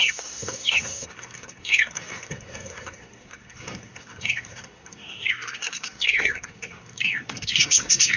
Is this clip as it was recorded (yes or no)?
no